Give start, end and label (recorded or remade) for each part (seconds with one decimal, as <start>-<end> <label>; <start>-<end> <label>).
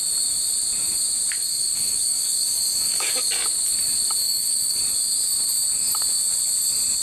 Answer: 0.0-1.5 recorded; 1.5-3.1 remade; 3.1-4.2 recorded; 4.2-4.8 remade; 4.8-7.0 recorded